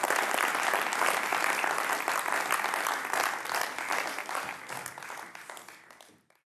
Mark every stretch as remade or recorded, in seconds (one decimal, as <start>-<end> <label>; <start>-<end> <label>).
0.0-6.5 recorded